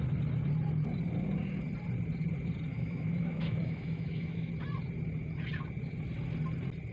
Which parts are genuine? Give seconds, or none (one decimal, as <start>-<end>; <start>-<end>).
0.0-2.7; 4.5-6.9